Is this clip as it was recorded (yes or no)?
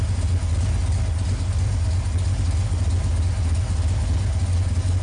yes